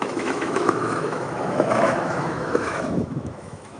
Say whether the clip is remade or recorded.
remade